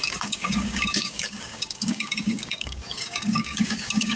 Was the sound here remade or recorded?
remade